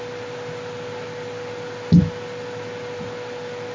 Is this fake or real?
real